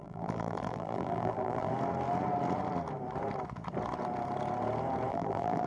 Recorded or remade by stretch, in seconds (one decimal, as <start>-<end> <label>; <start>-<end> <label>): 0.0-1.7 remade; 1.7-5.1 recorded; 5.1-5.7 remade